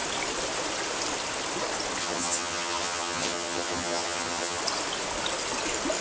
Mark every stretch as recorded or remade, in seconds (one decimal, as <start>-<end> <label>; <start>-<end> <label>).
0.0-2.0 recorded; 2.0-4.6 remade; 4.6-6.0 recorded